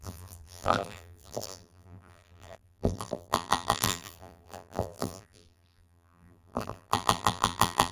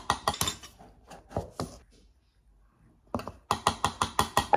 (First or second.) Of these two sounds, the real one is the second